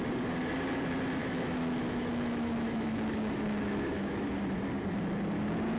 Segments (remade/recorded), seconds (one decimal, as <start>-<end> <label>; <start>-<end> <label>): 0.0-1.2 recorded; 1.2-4.3 remade; 4.3-5.8 recorded